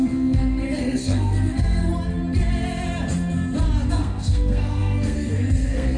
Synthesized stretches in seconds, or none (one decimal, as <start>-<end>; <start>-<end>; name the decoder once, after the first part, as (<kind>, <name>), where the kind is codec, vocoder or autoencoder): 0.0-1.9 (codec, SNAC); 3.9-6.0